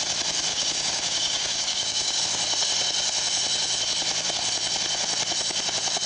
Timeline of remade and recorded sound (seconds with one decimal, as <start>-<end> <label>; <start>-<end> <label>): 0.0-0.5 recorded; 0.5-2.2 remade; 2.2-6.1 recorded